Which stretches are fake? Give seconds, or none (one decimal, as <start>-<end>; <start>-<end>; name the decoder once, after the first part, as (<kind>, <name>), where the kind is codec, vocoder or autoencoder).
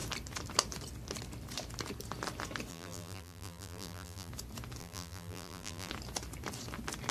2.7-4.3 (vocoder, BigVGAN v2); 4.8-5.9